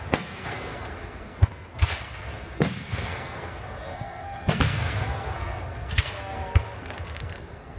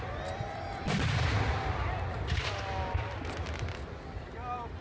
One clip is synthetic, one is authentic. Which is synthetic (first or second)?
first